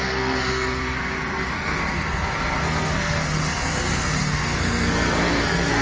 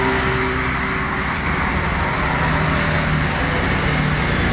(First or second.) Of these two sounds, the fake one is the first